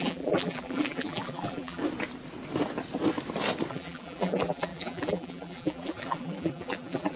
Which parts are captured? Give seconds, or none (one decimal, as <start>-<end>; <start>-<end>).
1.8-3.7